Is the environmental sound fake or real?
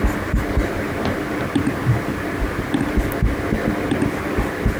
real